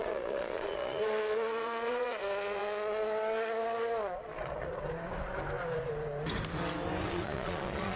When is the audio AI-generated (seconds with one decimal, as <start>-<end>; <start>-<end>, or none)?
0.0-2.6; 7.1-8.0